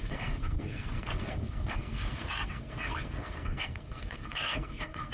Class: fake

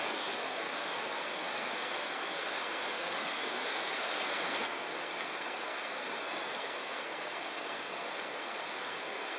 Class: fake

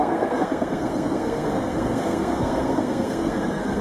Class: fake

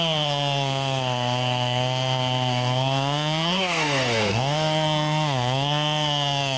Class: fake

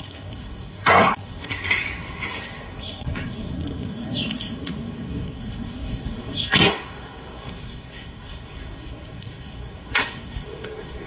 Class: fake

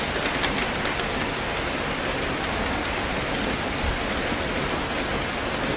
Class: real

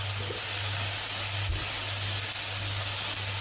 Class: real